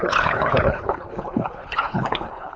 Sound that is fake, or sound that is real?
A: fake